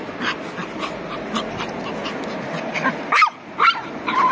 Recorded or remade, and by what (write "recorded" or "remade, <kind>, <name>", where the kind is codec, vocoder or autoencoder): recorded